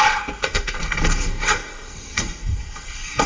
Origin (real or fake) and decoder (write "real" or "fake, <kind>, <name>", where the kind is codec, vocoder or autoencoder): fake, codec, SNAC